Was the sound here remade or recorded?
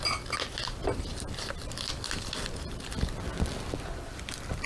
recorded